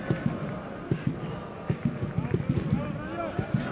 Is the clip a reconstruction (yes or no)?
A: no